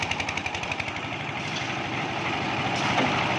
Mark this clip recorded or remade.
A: remade